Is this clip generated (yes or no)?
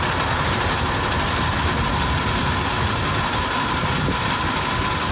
no